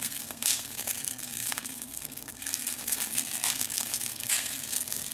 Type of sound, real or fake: fake